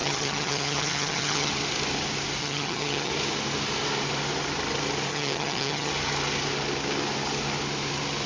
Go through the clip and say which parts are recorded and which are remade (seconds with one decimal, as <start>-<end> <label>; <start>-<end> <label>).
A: 0.0-1.5 remade; 1.5-2.4 recorded; 2.4-3.1 remade; 3.1-5.1 recorded; 5.1-5.9 remade; 5.9-8.3 recorded